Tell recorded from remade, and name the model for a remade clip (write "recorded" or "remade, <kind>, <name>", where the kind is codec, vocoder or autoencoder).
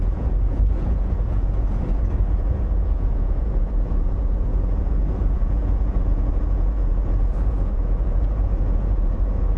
remade, vocoder, Vocos